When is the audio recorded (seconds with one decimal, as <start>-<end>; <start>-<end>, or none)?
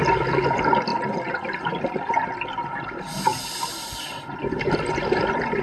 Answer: 0.0-5.6